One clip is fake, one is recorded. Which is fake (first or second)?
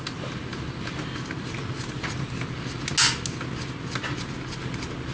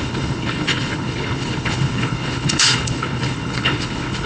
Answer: second